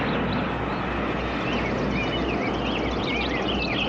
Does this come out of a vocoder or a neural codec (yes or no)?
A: no